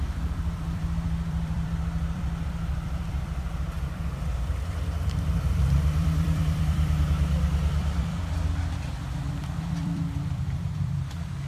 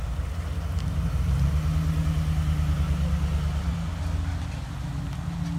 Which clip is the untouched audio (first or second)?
second